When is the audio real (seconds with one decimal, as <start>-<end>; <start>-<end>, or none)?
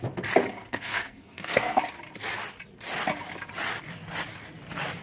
0.0-0.5; 1.8-5.0